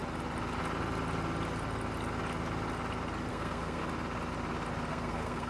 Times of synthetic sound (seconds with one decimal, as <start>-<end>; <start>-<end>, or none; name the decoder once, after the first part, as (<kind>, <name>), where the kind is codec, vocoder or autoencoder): 3.3-3.8 (codec, SNAC); 4.9-5.5